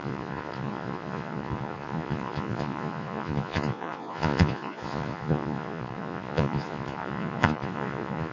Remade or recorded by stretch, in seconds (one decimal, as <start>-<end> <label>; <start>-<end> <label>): 0.0-8.3 remade